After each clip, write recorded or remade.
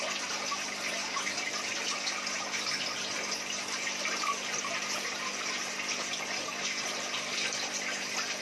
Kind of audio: recorded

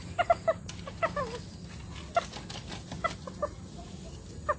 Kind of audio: recorded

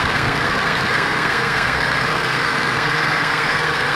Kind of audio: remade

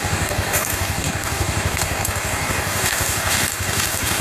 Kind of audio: remade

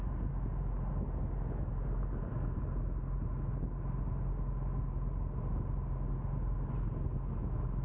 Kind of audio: recorded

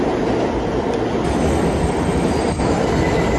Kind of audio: recorded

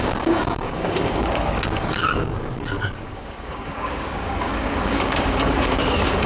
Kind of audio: remade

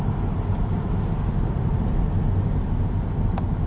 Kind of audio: recorded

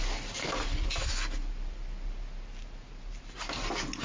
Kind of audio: recorded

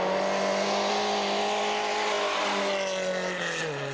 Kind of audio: recorded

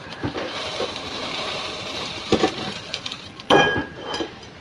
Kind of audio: remade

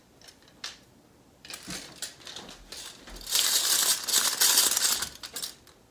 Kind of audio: recorded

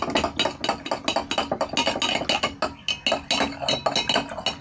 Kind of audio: recorded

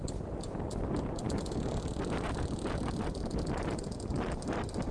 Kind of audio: remade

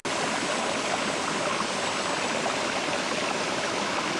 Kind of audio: recorded